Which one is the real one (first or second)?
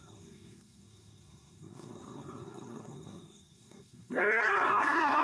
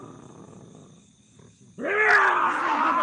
second